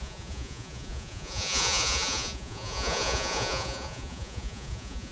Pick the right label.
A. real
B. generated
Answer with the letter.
B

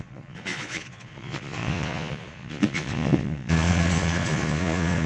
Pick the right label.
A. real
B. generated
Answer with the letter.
B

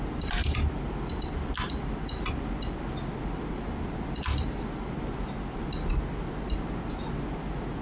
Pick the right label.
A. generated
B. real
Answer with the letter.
B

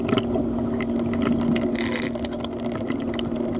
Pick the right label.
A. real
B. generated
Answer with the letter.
A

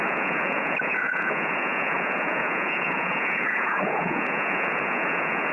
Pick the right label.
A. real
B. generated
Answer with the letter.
B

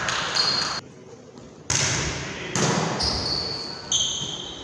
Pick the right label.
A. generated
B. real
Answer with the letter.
B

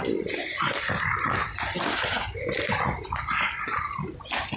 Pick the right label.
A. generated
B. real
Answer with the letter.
B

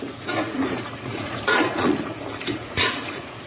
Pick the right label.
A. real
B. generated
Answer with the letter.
B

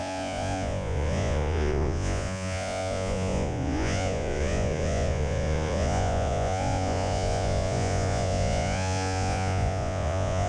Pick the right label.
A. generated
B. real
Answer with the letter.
A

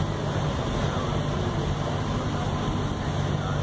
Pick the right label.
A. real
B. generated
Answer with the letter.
A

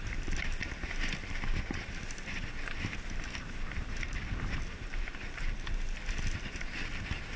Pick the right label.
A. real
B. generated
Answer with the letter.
A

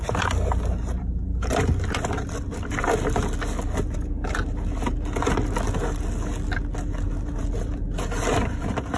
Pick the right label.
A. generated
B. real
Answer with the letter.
B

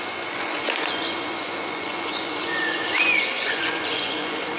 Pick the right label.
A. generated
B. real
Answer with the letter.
A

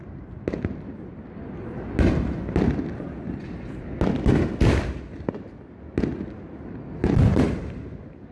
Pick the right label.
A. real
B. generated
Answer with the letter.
A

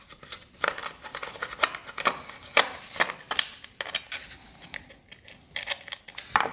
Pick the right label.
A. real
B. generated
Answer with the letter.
A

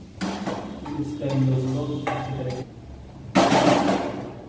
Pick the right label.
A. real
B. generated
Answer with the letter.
A